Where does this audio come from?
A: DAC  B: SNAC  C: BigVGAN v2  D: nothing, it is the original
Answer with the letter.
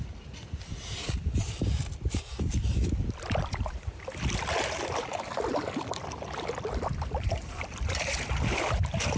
C